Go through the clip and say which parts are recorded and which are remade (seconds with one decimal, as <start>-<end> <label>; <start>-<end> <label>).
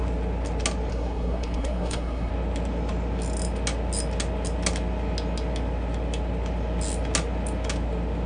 0.0-0.9 recorded; 0.9-2.3 remade; 2.3-8.3 recorded